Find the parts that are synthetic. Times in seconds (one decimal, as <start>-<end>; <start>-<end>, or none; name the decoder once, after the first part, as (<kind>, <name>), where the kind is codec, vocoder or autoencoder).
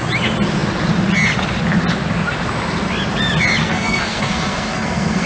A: 3.6-5.3 (codec, SNAC)